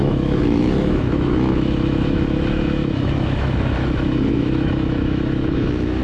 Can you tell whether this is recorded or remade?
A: remade